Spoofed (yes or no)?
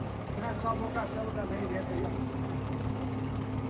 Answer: yes